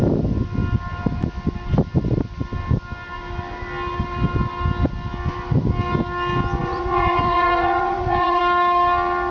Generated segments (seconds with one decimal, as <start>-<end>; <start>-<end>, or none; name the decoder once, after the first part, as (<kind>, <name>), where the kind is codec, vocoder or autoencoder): 6.6-8.4 (vocoder, Vocos)